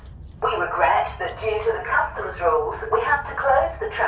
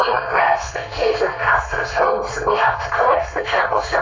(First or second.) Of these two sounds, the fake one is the second